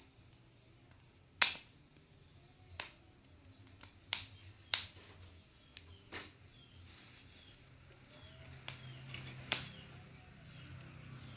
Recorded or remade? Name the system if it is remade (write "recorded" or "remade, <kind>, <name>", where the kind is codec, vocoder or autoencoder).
recorded